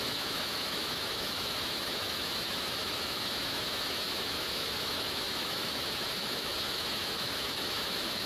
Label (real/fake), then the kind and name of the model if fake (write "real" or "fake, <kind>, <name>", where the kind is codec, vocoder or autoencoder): fake, autoencoder, DAC-VAE